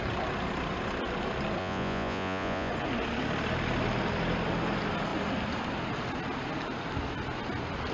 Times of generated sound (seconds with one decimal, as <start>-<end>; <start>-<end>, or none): 1.6-2.7